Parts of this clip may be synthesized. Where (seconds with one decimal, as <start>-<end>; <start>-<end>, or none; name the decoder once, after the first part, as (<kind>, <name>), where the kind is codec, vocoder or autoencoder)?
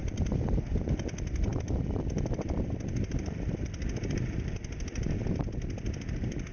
0.0-6.5 (vocoder, BigVGAN v2)